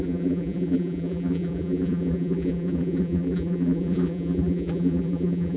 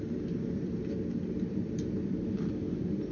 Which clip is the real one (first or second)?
second